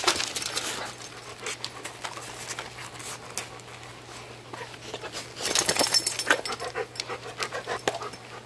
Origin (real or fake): real